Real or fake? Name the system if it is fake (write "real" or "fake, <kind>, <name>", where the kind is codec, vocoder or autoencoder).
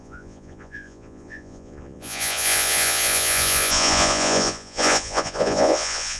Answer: fake, vocoder, Vocos